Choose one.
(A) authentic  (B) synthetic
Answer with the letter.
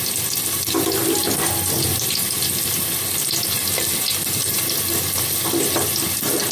A